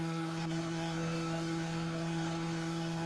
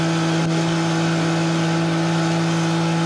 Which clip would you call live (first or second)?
second